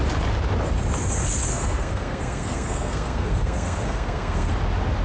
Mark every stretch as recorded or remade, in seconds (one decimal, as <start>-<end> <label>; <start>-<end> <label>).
0.0-1.5 recorded; 1.5-4.5 remade; 4.5-5.0 recorded